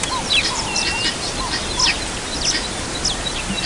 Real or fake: real